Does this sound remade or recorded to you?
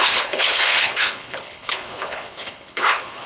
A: remade